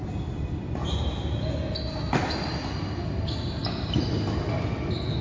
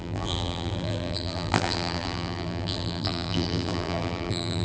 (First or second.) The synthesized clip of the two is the second